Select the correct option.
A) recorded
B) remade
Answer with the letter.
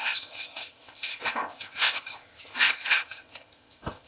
B